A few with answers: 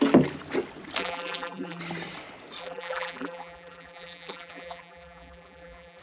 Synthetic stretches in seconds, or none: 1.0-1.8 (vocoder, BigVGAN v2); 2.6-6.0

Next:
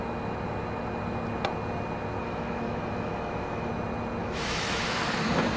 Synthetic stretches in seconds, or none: 2.2-3.7 (autoencoder, DAC-VAE); 4.2-5.0